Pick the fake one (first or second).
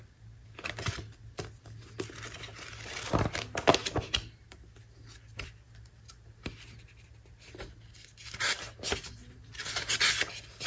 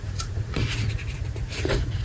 second